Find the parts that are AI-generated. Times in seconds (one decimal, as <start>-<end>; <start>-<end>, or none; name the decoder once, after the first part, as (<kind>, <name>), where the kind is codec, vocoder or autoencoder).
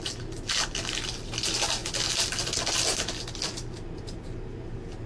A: none